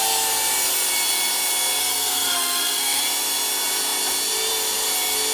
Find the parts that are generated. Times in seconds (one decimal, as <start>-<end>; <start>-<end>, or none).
1.8-3.0